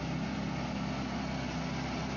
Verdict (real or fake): real